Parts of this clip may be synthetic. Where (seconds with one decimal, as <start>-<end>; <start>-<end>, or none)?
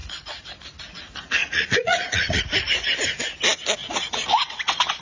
1.4-2.4; 3.8-4.6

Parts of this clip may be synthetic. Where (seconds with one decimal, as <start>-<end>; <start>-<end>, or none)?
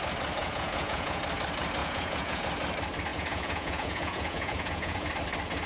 0.4-1.2; 1.8-2.4; 3.1-5.1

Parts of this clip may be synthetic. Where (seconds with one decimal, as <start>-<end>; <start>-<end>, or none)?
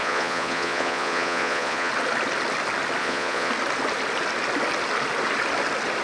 0.0-1.9; 3.0-3.5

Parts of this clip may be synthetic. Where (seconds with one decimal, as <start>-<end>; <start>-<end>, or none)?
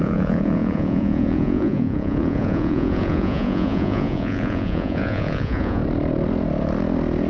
0.0-5.8